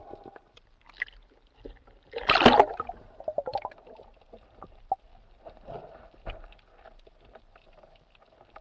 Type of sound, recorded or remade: remade